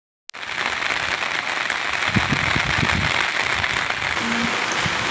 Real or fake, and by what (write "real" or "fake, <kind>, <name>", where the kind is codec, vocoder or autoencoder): real